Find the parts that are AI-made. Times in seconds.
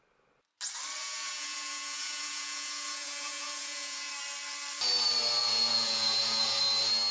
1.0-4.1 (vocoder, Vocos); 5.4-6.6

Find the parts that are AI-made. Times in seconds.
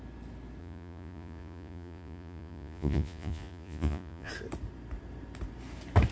0.6-4.3 (vocoder, Vocos)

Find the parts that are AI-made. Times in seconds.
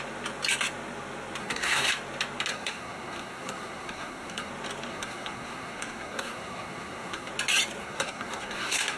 1.4-1.9 (codec, SNAC); 2.5-4.5; 4.9-7.3; 7.8-9.0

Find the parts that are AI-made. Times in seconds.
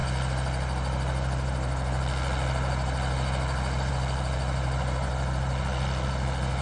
none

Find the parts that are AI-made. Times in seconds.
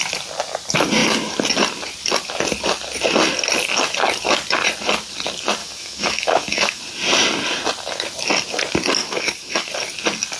5.6-6.8 (autoencoder, DAC-VAE); 9.0-9.7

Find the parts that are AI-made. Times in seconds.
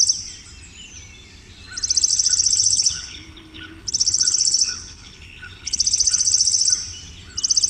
2.1-6.7 (codec, HILCodec)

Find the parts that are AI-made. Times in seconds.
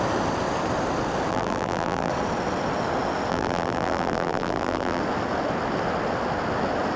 1.3-2.1 (vocoder, BigVGAN v2); 3.3-5.0